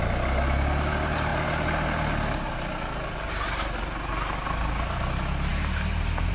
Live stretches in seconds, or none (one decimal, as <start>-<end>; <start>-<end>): 0.0-6.3